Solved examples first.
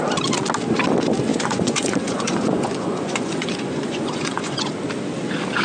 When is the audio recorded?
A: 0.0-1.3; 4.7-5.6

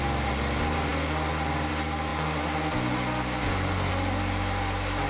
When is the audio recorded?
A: 0.0-5.1

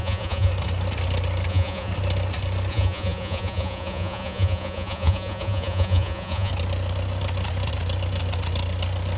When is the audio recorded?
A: 0.5-1.5; 1.9-2.7; 6.5-9.2

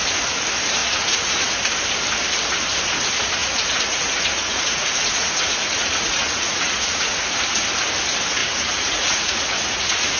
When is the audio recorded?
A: 0.0-0.8; 1.5-3.4; 7.2-8.4